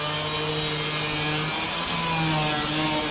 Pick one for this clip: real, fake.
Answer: real